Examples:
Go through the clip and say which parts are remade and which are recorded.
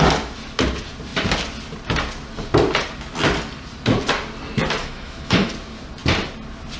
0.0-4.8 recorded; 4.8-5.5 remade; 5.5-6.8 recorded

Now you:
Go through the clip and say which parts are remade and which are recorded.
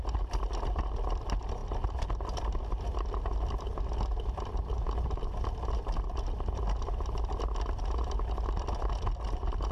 0.0-9.7 recorded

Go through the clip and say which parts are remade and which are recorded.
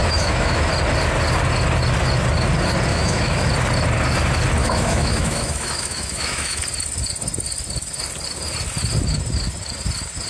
0.0-0.7 remade; 0.7-2.9 recorded; 2.9-3.5 remade; 3.5-4.6 recorded; 4.6-6.6 remade; 6.6-10.3 recorded